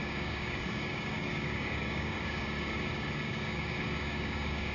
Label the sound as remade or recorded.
remade